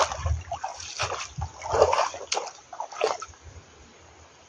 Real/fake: real